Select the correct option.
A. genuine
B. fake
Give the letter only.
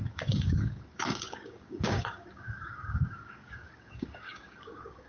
B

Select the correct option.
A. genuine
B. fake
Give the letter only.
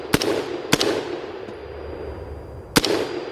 A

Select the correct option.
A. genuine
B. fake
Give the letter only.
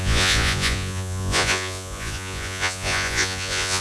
B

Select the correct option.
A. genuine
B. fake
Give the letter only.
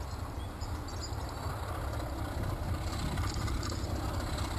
A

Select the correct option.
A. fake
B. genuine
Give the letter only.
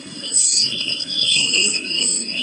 A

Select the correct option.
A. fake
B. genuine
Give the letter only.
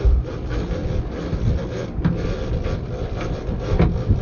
B